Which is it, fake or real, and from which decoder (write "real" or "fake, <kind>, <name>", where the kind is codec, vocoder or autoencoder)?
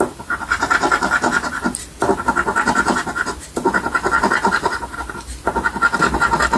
real